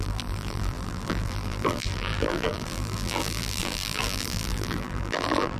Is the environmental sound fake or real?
fake